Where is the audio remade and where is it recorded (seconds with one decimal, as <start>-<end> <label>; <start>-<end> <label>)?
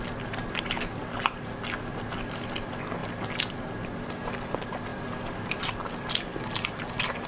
0.0-7.3 recorded